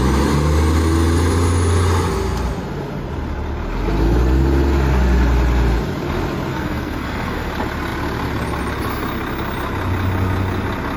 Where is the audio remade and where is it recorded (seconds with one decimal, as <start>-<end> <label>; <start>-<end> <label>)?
0.0-6.5 recorded; 6.5-7.5 remade; 7.5-11.0 recorded